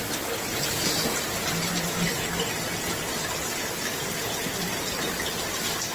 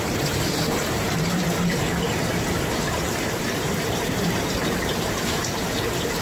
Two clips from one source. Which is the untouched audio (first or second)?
first